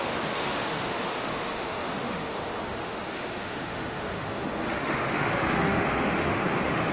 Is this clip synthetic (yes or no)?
yes